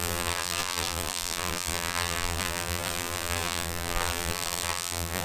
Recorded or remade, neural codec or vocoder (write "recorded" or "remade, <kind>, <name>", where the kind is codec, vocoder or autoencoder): remade, vocoder, BigVGAN v2